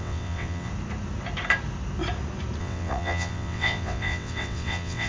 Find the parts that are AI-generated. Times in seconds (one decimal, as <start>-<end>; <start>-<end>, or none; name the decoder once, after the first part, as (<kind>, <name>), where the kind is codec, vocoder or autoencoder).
0.0-0.7 (vocoder, WaveNeXt); 2.6-5.1